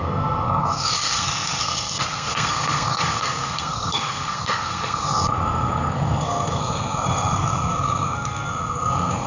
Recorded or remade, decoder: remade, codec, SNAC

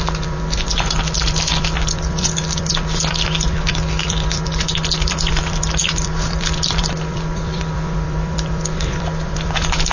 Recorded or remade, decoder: remade, vocoder, BigVGAN v2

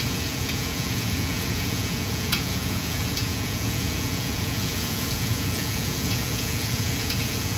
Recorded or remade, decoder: remade, vocoder, Vocos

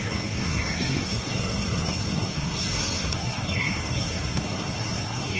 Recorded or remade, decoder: remade, codec, SNAC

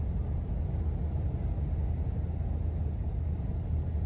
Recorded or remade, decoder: recorded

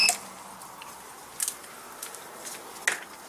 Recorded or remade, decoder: recorded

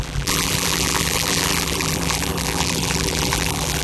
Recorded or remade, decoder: remade, vocoder, BigVGAN v2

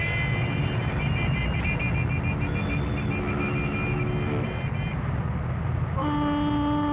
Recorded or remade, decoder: recorded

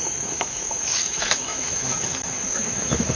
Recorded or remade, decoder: remade, autoencoder, DAC-VAE